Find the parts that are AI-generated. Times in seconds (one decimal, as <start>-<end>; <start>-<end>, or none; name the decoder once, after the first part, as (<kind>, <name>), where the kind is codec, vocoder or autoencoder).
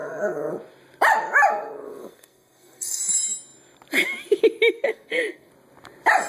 0.0-0.5 (codec, SNAC); 1.5-3.0; 4.9-5.5